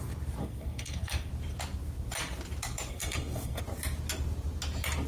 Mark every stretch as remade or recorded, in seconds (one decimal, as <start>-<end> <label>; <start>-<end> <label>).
0.0-0.4 recorded; 0.4-1.3 remade; 1.3-2.9 recorded; 2.9-3.6 remade; 3.6-5.1 recorded